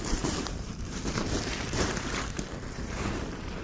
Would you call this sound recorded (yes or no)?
no